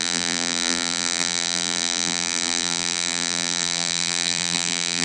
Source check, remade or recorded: remade